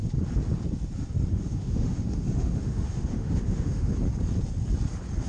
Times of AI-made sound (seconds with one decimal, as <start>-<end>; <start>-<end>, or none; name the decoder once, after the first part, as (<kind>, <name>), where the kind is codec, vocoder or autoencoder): 1.3-3.9 (autoencoder, DAC-VAE)